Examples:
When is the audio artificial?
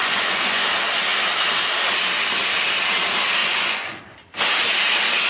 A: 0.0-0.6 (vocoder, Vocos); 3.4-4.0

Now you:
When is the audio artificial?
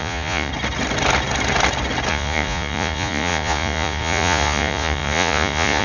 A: 0.0-0.5 (vocoder, Vocos); 2.1-5.8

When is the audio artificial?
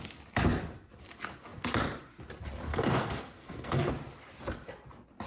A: 2.7-3.9 (codec, SNAC)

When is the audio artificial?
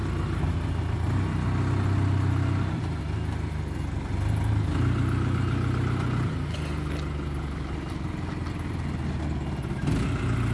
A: none